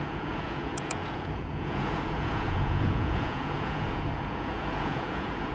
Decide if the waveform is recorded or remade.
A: remade